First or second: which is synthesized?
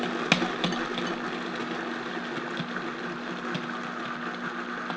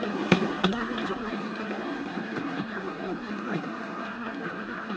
second